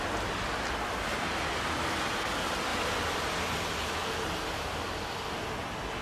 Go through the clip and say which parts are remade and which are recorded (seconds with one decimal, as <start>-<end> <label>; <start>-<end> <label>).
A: 0.0-6.0 recorded